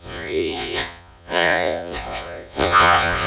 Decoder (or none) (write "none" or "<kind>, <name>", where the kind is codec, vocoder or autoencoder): vocoder, Vocos